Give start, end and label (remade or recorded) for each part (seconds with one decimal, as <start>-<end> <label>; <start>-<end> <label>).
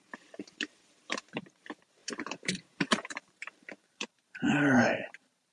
0.0-5.5 remade